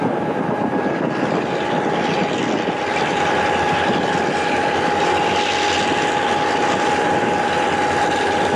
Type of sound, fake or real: real